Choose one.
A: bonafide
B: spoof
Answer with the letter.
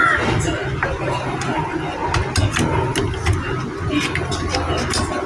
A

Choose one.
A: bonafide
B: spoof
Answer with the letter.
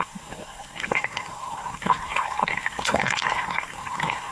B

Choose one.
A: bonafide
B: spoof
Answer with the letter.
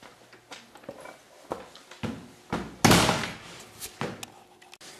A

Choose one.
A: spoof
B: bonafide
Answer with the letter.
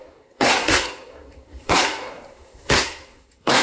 A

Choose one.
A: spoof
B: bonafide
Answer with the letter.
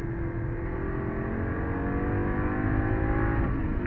B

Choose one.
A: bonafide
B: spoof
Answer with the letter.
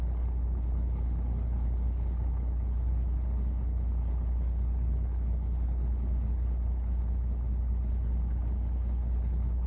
B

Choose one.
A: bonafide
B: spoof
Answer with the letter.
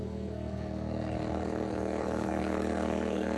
B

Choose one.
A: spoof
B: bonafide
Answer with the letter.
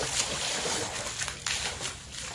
B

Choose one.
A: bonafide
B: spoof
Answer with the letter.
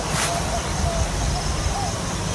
A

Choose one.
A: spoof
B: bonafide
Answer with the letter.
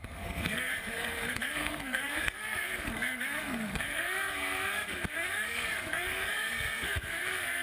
A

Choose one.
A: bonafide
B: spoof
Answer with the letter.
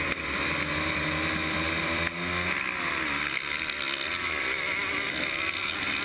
A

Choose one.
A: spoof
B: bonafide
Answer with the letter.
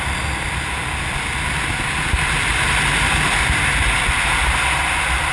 B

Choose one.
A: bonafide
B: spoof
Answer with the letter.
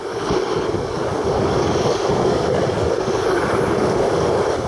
B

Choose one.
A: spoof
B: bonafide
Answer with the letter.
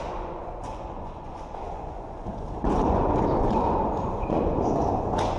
A